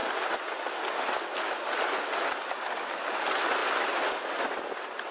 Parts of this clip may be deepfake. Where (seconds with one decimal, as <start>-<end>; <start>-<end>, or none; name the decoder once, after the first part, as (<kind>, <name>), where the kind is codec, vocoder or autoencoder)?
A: none